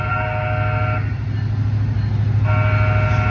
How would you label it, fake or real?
real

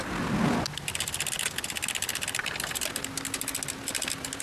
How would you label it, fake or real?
real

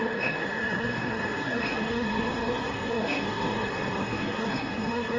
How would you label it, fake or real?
fake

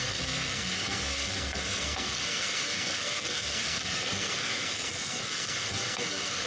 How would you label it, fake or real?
fake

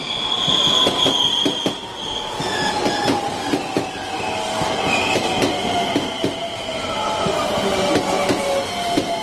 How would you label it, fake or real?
real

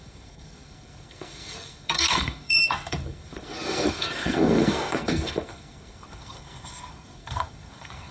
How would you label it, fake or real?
fake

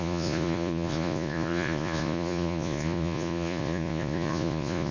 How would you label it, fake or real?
fake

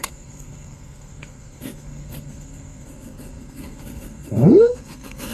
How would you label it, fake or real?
fake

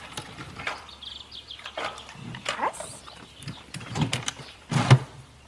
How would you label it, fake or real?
fake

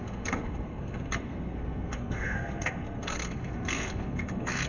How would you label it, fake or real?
fake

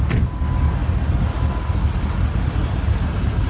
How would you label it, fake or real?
real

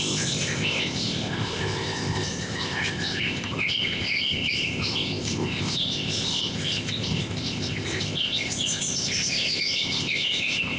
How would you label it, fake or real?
fake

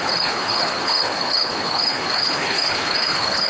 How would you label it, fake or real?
fake